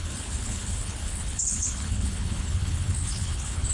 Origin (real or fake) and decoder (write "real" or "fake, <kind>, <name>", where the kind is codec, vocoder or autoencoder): fake, codec, HILCodec